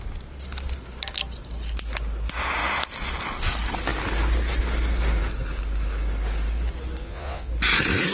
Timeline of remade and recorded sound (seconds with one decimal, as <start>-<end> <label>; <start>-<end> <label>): 0.0-7.0 recorded; 7.0-7.5 remade; 7.5-8.1 recorded